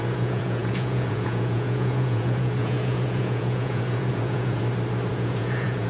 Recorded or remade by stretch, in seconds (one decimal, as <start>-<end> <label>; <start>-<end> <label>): 0.0-4.6 remade; 4.6-5.1 recorded; 5.1-5.9 remade